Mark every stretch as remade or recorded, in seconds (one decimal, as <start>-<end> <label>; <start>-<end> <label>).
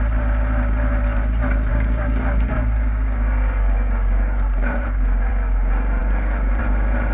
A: 0.0-1.7 recorded; 1.7-5.3 remade; 5.3-6.0 recorded; 6.0-6.6 remade; 6.6-7.1 recorded